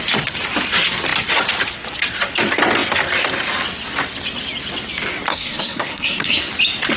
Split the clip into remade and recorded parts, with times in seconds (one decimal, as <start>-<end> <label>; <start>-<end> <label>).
0.0-5.3 recorded; 5.3-6.5 remade; 6.5-7.0 recorded